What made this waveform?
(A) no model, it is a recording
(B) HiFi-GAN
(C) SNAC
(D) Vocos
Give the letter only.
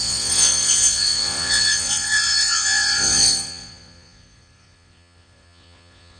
D